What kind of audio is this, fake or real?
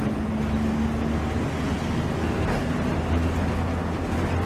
real